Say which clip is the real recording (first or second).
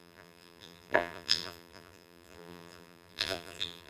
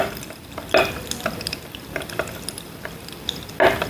second